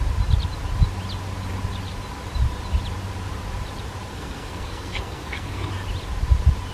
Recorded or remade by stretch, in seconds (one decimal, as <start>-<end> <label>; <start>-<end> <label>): 0.0-4.1 recorded; 4.1-5.7 remade; 5.7-6.7 recorded